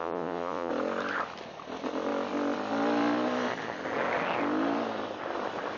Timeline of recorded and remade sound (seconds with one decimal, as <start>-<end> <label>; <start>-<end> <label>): 0.0-0.7 remade; 0.7-5.8 recorded

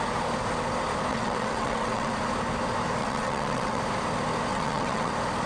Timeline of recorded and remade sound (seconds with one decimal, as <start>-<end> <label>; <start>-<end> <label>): 0.0-1.1 recorded; 1.1-2.1 remade; 2.1-3.0 recorded; 3.0-3.8 remade; 3.8-4.5 recorded; 4.5-5.1 remade; 5.1-5.5 recorded

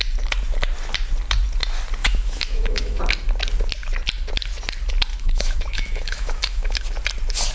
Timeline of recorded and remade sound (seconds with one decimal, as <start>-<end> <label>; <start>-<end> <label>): 0.0-2.0 recorded; 2.0-3.0 remade; 3.0-5.1 recorded; 5.1-6.8 remade; 6.8-7.5 recorded

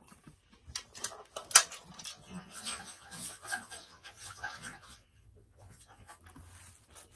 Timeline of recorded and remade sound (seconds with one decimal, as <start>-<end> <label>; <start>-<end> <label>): 0.0-2.1 recorded; 2.1-6.2 remade; 6.2-7.2 recorded

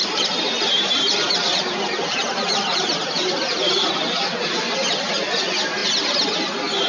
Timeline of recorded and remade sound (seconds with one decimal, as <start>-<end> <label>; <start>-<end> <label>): 0.0-3.9 remade; 3.9-6.9 recorded

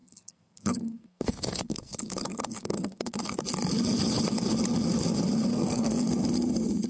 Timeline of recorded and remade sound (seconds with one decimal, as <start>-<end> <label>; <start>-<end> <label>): 0.0-3.4 remade; 3.4-5.5 recorded; 5.5-6.1 remade; 6.1-6.9 recorded

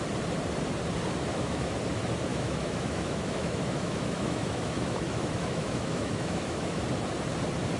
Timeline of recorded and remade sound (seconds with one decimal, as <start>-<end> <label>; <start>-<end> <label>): 0.0-1.3 recorded; 1.3-1.8 remade; 1.8-2.3 recorded; 2.3-6.8 remade; 6.8-7.8 recorded

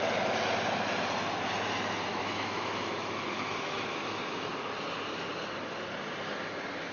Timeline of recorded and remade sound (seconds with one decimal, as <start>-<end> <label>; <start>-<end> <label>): 0.0-2.1 recorded; 2.1-4.5 remade; 4.5-6.9 recorded